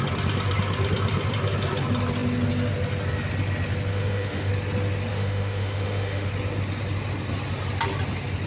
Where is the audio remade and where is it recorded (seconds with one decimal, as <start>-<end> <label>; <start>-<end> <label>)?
0.0-3.9 recorded; 3.9-4.5 remade; 4.5-5.1 recorded; 5.1-6.3 remade; 6.3-8.5 recorded